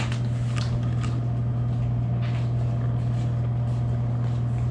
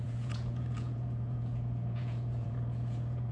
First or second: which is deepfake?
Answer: second